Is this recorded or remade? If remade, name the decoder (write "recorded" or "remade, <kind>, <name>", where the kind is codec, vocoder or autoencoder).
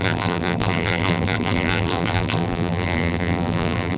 remade, vocoder, BigVGAN v2